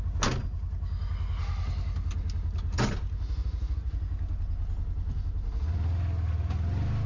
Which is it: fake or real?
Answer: real